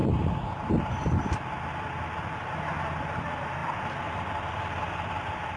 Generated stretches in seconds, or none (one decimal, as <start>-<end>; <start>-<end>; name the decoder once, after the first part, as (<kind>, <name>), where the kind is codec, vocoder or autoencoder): none